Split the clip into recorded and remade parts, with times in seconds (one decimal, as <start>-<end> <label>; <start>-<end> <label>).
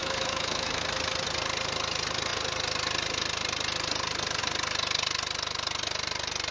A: 0.0-0.8 remade; 0.8-6.5 recorded